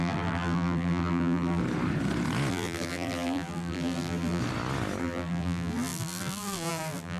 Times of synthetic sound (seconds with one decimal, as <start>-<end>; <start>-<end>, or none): 0.0-1.6; 2.5-4.4; 5.0-7.2